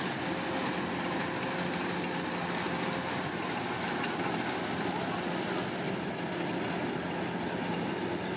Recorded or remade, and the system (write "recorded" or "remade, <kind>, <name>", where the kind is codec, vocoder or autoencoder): recorded